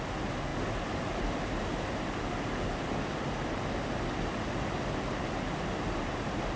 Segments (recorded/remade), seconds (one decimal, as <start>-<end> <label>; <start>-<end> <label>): 0.0-6.6 recorded

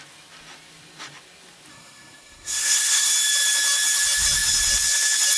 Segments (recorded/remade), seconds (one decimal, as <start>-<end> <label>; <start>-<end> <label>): 0.0-1.7 recorded; 1.7-3.1 remade; 3.1-5.4 recorded

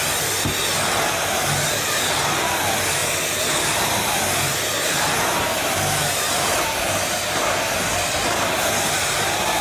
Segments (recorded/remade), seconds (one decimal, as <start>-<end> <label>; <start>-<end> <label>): 0.0-9.6 recorded

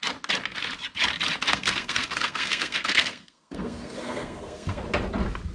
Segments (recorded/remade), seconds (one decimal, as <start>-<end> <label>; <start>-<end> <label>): 0.0-1.5 recorded; 1.5-4.8 remade; 4.8-5.5 recorded

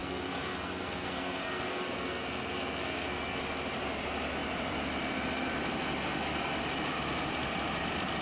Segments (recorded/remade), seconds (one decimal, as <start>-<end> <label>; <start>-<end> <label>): 0.0-3.4 remade; 3.4-8.2 recorded